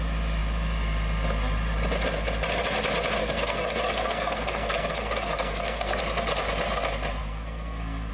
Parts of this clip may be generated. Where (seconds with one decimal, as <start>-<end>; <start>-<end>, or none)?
3.2-6.0; 7.2-8.1